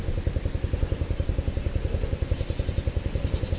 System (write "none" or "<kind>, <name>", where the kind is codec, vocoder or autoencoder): none